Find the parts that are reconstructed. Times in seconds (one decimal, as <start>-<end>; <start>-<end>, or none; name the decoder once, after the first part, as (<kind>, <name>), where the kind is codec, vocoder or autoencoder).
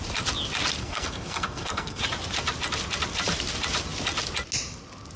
0.8-2.0 (codec, SNAC)